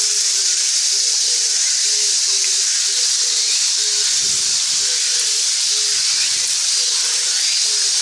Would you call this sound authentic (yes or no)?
yes